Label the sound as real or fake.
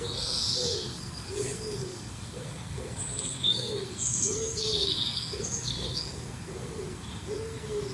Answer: fake